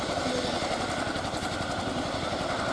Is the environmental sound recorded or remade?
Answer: recorded